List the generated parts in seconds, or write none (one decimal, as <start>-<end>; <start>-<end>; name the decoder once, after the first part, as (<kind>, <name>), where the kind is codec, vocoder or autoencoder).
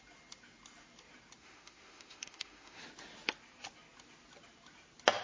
1.4-2.8 (autoencoder, DAC-VAE)